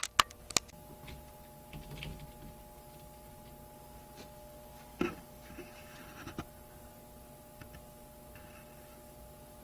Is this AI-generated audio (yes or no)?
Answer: no